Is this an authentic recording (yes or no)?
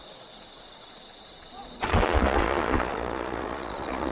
no